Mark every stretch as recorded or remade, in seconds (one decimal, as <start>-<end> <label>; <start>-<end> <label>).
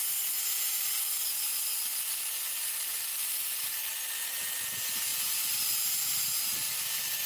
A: 0.0-1.2 recorded; 1.2-3.9 remade; 3.9-5.1 recorded; 5.1-6.3 remade; 6.3-7.3 recorded